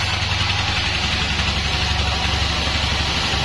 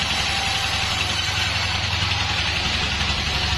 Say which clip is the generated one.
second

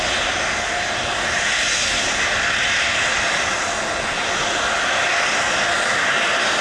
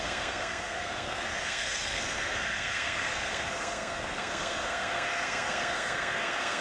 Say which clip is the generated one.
second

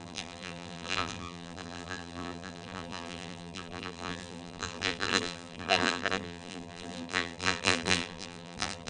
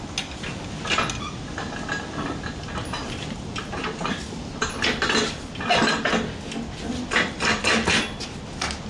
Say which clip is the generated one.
first